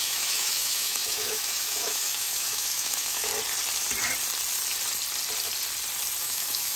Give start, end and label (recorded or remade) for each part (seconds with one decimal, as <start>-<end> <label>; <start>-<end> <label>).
0.0-3.3 remade; 3.3-6.2 recorded; 6.2-6.8 remade